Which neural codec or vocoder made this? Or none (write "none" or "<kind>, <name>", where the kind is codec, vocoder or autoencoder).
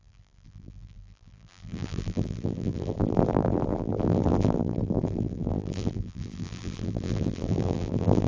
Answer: vocoder, BigVGAN v2